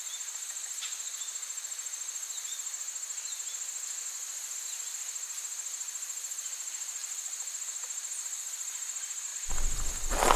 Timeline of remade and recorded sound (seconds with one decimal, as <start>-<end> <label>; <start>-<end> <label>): 0.0-10.4 recorded